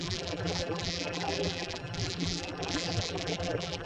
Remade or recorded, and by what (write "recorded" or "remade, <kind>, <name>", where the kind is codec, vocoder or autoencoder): remade, vocoder, BigVGAN v2